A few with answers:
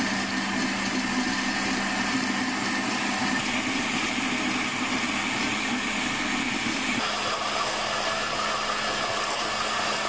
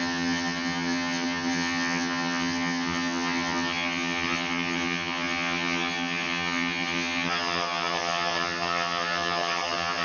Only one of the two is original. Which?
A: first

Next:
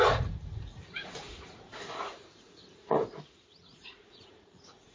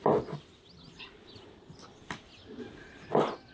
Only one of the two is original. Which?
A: second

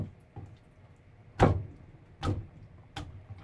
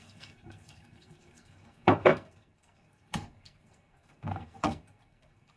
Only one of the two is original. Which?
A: first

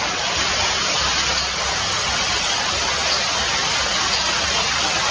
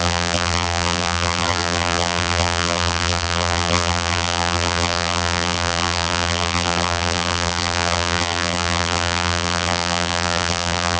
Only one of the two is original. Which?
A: first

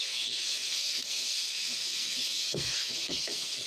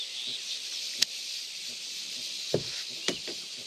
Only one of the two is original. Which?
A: second